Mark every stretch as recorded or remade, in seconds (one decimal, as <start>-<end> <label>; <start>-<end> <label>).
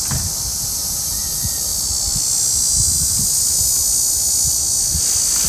0.0-5.5 recorded